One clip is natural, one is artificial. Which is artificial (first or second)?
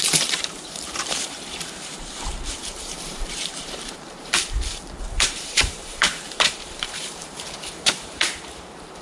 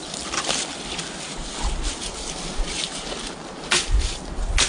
first